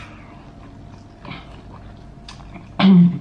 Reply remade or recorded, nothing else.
recorded